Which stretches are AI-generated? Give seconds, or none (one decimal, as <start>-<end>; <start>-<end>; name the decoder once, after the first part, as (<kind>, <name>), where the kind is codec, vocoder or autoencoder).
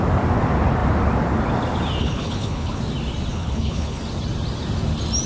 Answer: 2.0-2.8 (codec, HILCodec); 3.3-4.0